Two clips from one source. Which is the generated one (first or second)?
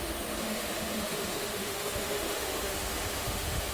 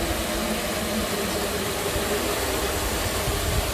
first